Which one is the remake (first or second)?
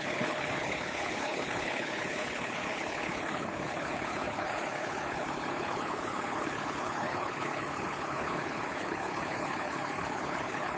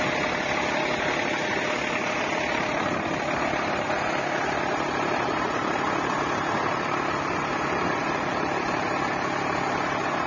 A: first